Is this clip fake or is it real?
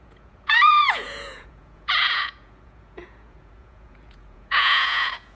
fake